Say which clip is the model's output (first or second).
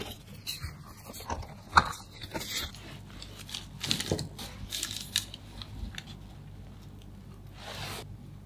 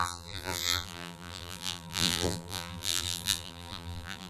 second